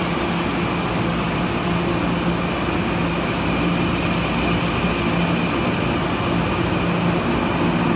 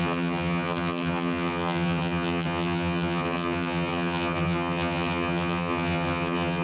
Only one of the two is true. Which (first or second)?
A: first